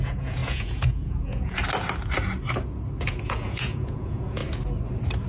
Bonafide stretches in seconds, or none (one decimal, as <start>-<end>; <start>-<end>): 1.6-3.0; 4.4-5.3